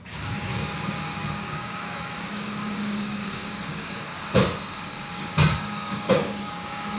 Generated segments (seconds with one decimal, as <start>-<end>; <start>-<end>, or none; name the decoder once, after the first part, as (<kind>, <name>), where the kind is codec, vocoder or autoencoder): 0.0-4.1 (codec, DAC); 5.1-7.0